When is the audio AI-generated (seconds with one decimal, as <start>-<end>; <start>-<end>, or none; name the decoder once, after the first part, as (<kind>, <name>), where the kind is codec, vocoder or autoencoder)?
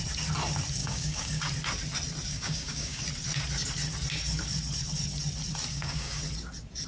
0.8-1.4 (codec, DAC); 2.3-3.0; 5.7-6.2